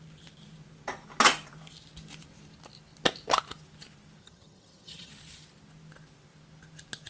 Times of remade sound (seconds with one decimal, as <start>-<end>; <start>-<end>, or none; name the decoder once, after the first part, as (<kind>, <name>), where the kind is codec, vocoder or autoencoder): 4.2-5.1 (vocoder, HiFi-GAN)